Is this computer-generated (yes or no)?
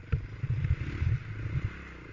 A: no